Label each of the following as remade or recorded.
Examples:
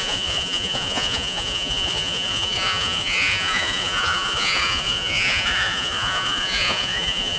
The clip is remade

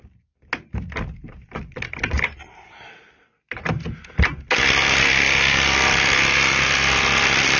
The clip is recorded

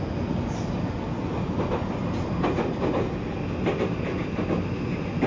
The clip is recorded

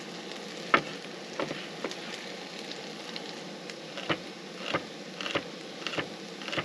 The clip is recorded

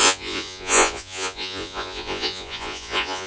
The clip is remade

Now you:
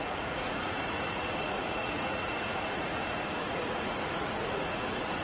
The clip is remade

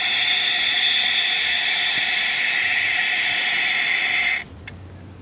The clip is recorded